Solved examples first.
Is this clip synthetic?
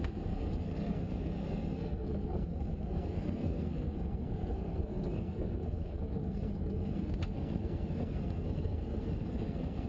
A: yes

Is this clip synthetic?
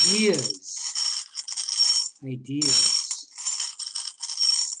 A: no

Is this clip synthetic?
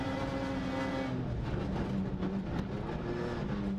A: no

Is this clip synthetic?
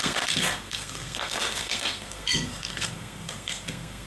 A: yes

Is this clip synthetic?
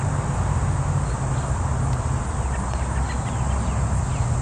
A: no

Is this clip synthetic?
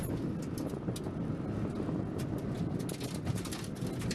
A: no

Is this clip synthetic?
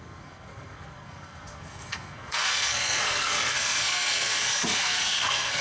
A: yes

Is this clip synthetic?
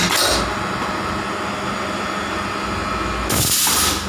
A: no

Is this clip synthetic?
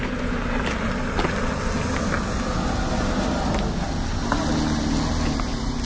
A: no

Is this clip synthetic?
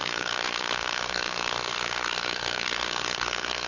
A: yes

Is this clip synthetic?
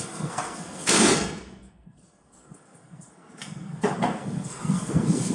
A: yes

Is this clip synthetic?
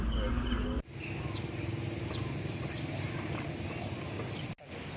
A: no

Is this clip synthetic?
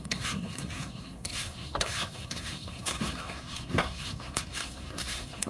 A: yes